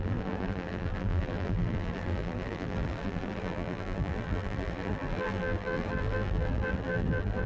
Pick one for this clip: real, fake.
fake